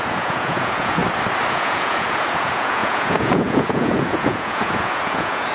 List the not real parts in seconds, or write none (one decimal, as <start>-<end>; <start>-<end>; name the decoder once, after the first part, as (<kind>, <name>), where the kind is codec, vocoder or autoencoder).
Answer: 0.0-1.0 (vocoder, Vocos); 1.5-5.5